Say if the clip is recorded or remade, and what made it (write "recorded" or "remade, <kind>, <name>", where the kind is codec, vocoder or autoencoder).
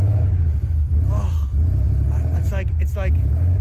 recorded